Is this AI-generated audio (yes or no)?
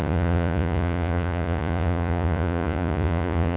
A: yes